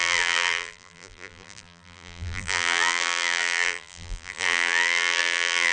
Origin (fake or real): fake